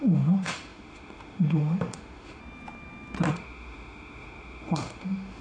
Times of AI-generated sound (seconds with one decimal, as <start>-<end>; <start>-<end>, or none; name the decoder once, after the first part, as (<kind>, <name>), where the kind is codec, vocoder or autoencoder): 0.0-2.4 (autoencoder, DAC-VAE); 3.3-5.4